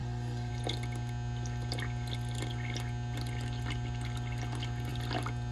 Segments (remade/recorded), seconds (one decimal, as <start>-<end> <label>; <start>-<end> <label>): 0.0-0.5 remade; 0.5-5.5 recorded